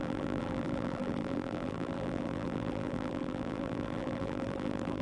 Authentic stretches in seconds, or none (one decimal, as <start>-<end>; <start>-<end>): none